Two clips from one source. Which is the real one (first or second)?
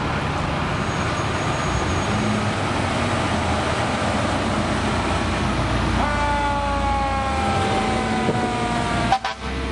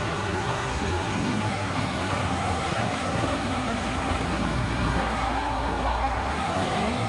first